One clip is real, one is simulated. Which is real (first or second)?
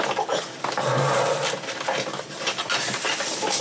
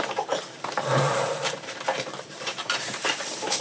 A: first